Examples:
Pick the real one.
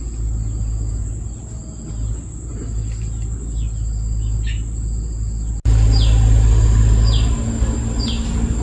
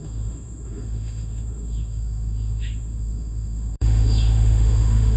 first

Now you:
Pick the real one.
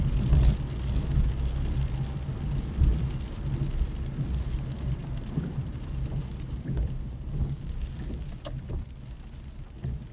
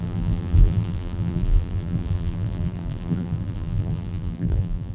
first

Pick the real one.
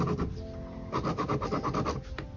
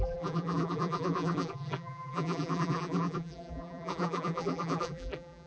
first